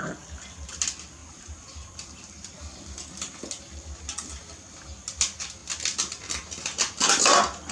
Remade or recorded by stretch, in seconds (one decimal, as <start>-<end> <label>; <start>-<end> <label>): 0.0-1.2 recorded; 1.2-2.8 remade; 2.8-7.7 recorded

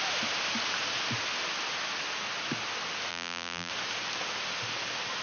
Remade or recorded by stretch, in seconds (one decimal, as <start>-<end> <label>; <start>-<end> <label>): 0.0-3.1 recorded; 3.1-3.7 remade; 3.7-5.2 recorded

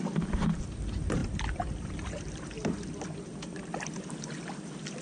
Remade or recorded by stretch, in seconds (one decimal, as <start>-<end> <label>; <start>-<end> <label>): 0.0-5.0 recorded

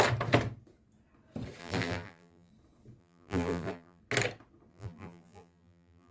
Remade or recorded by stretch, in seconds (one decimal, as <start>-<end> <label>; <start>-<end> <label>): 0.0-1.6 recorded; 1.6-2.5 remade; 2.5-3.0 recorded; 3.0-4.0 remade; 4.0-4.7 recorded; 4.7-6.1 remade

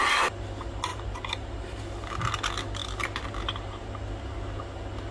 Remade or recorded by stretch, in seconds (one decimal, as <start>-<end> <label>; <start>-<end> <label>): 0.0-0.9 recorded; 0.9-1.8 remade; 1.8-5.1 recorded

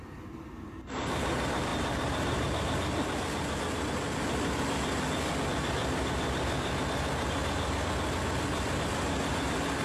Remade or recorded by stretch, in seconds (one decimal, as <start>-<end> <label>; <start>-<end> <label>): 0.0-9.8 recorded

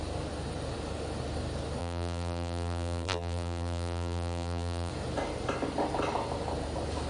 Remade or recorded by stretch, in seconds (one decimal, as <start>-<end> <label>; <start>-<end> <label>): 0.0-1.8 recorded; 1.8-4.9 remade; 4.9-7.1 recorded

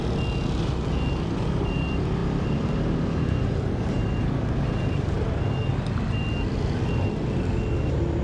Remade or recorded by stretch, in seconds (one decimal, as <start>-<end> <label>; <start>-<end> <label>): 0.0-8.2 recorded